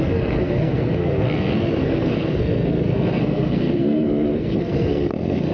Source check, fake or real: fake